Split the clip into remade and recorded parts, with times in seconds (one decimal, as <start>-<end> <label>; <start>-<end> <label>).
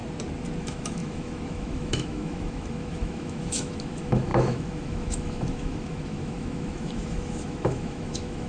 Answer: 0.0-0.6 recorded; 0.6-8.5 remade